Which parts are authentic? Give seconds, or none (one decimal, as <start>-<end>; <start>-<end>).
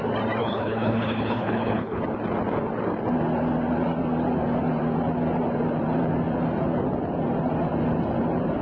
0.0-0.4; 2.0-8.6